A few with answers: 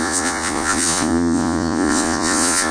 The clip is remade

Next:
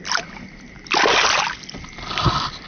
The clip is recorded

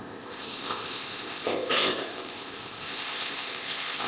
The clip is remade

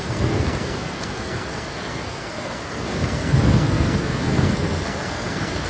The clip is remade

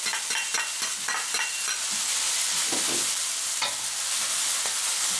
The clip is recorded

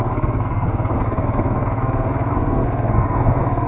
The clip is remade